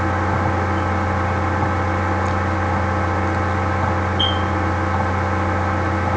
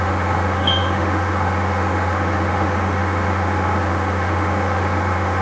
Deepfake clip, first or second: second